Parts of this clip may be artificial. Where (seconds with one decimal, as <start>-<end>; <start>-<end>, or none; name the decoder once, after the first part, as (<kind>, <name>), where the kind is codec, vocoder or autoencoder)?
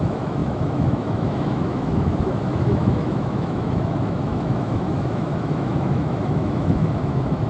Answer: 0.0-7.5 (autoencoder, DAC-VAE)